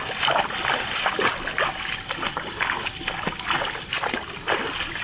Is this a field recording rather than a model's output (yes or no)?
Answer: yes